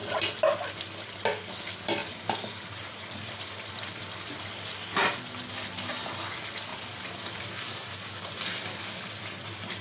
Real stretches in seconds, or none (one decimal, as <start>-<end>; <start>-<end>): 0.0-2.0; 3.7-6.7; 7.2-9.8